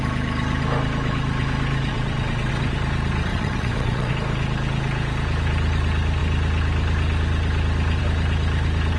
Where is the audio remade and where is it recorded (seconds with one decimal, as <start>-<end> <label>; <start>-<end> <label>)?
0.0-1.9 recorded; 1.9-2.5 remade; 2.5-3.3 recorded; 3.3-4.1 remade; 4.1-9.0 recorded